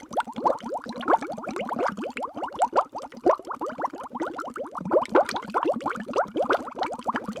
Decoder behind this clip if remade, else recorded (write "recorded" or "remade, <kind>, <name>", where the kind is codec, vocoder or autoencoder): recorded